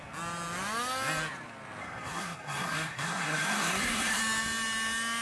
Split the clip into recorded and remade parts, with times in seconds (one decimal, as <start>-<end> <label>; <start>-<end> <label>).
0.0-1.8 recorded; 1.8-4.2 remade; 4.2-5.2 recorded